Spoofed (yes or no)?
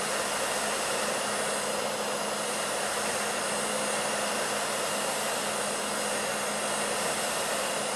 no